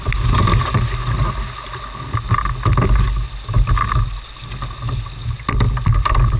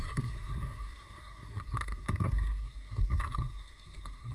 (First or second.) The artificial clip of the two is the second